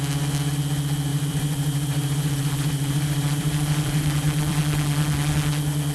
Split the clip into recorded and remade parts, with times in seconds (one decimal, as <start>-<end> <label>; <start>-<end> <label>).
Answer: 0.0-1.1 recorded; 1.1-4.6 remade; 4.6-5.9 recorded